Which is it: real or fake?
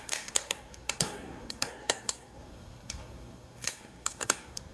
fake